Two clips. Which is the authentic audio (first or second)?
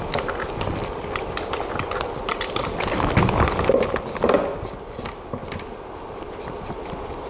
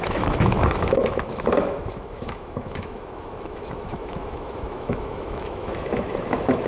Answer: first